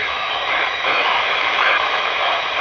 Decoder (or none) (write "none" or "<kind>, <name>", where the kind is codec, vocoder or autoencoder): autoencoder, DAC-VAE